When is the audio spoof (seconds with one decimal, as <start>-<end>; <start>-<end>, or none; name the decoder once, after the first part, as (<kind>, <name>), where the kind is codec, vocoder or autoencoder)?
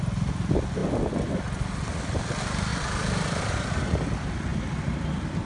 2.7-3.5 (vocoder, BigVGAN v2); 4.5-5.5